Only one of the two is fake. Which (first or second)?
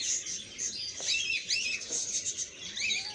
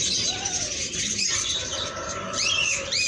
second